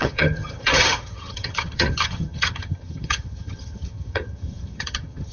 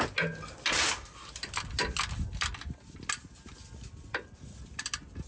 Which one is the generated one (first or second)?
first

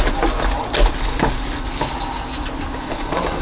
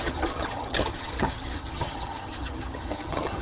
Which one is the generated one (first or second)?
second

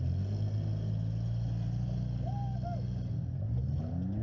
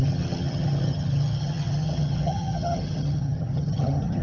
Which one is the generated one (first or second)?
second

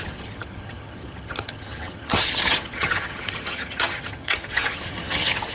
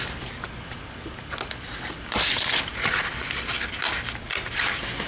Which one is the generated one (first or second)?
first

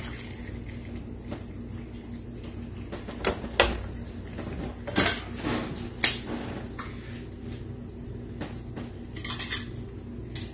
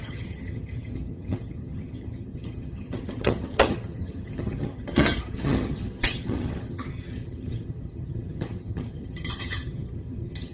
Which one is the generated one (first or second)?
second